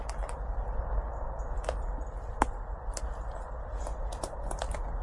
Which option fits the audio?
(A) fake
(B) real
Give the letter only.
B